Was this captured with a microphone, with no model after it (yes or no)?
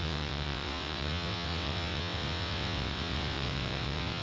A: no